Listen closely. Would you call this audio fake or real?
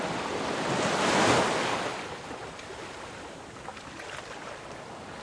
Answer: real